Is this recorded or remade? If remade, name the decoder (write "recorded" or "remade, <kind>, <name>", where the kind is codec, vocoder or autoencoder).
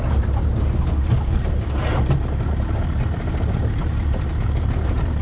recorded